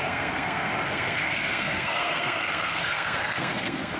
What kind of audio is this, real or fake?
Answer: fake